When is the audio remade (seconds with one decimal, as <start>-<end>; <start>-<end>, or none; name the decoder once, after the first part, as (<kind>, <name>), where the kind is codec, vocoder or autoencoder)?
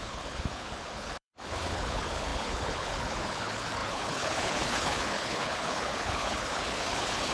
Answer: 0.0-7.3 (codec, HILCodec)